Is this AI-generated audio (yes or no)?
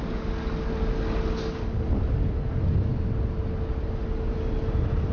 no